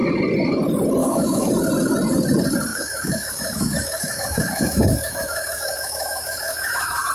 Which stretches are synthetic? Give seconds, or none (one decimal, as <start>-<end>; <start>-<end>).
1.0-1.5; 2.7-7.1